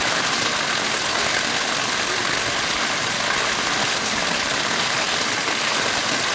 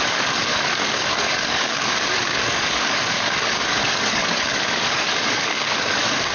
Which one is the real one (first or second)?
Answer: first